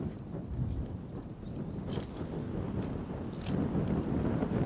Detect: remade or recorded recorded